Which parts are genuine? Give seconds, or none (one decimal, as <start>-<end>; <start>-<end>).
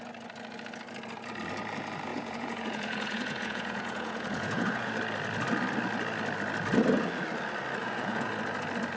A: 0.0-2.1; 4.9-7.8; 8.3-9.0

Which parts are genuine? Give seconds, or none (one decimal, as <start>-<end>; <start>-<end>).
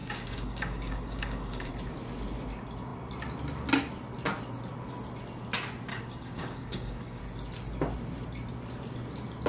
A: 1.7-5.9; 7.2-9.5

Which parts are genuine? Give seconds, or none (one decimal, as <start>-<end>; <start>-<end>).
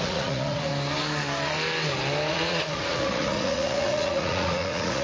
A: 0.7-2.3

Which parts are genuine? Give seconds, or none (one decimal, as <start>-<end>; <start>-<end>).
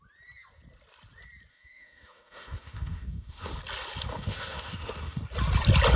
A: 0.0-1.5; 3.6-4.1; 5.2-6.0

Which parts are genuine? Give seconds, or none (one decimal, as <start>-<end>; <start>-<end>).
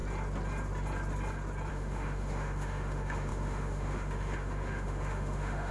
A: 0.0-1.7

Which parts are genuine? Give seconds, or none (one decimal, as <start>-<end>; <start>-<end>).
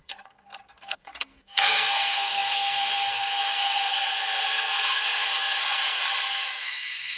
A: none